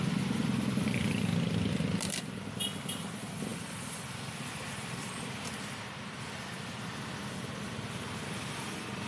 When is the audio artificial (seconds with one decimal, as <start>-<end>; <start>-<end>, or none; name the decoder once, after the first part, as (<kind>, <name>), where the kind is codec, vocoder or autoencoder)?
none